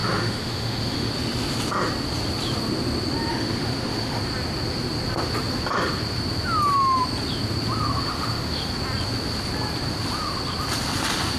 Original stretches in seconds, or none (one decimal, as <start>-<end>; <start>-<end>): 1.1-3.3; 4.2-8.0; 8.6-11.4